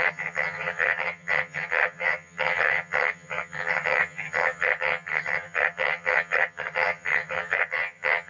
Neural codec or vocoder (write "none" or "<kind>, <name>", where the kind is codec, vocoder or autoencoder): vocoder, HiFi-GAN